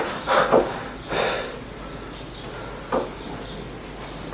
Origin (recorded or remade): recorded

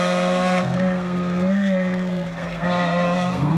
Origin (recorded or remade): remade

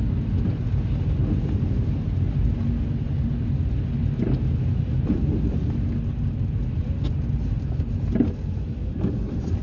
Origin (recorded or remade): recorded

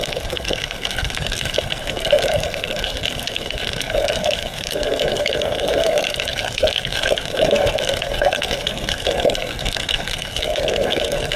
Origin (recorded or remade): remade